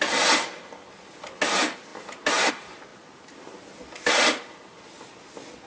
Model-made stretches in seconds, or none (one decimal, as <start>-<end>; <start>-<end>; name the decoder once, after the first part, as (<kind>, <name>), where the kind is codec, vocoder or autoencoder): none